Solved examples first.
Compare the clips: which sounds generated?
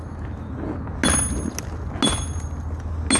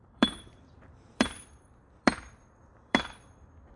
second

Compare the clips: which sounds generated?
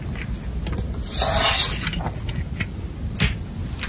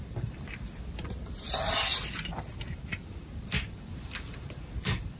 second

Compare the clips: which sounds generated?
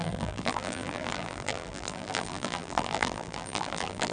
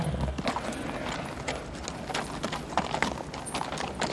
first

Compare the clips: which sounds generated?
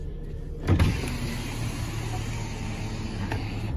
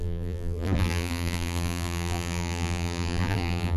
second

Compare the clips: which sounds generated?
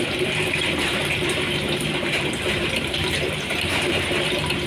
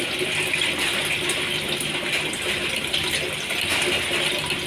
first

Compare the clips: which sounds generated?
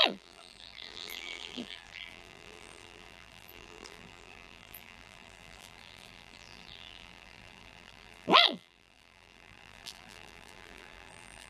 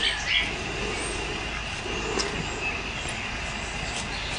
first